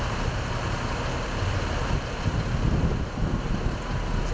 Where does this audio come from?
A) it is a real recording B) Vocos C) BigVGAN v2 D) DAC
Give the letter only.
A